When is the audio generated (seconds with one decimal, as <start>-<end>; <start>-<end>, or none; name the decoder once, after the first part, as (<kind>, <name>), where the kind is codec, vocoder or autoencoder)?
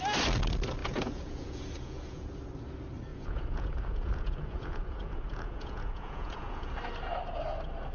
0.8-2.3 (vocoder, Vocos); 3.1-6.7